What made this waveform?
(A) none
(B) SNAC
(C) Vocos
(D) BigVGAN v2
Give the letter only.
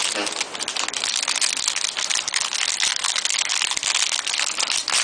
A